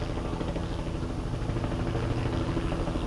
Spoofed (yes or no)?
no